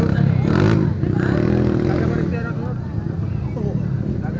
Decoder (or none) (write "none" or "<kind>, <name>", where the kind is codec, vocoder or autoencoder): none